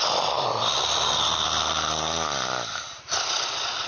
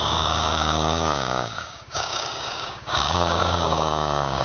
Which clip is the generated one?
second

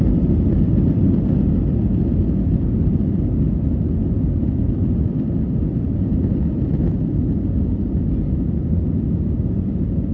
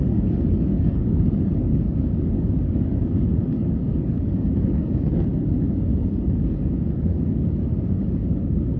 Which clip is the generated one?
second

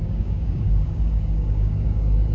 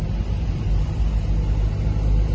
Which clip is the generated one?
first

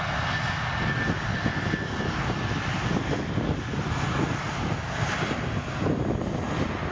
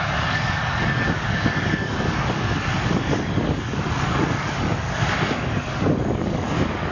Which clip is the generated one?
second